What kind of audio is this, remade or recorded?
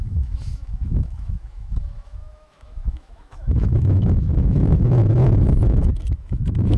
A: remade